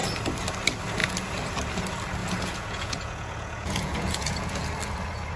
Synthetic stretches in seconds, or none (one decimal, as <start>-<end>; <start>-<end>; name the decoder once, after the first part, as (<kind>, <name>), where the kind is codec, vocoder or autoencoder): 2.2-4.7 (vocoder, Vocos)